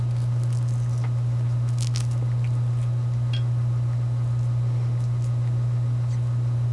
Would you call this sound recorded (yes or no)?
yes